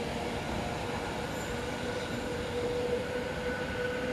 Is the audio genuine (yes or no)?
yes